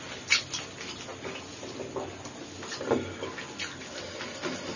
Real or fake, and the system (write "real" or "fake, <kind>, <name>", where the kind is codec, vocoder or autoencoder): real